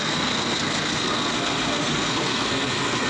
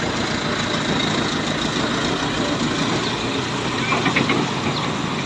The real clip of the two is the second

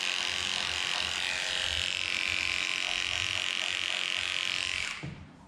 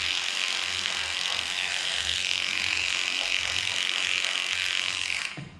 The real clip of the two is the first